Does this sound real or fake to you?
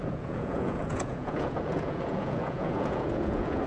fake